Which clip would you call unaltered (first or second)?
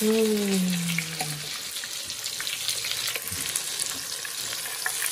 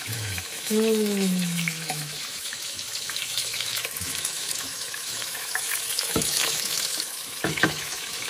first